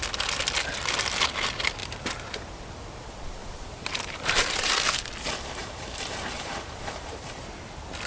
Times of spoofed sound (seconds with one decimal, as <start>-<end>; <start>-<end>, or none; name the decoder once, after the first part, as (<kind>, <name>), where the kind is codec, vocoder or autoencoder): 1.8-2.5 (vocoder, BigVGAN v2); 3.4-4.7; 5.6-7.4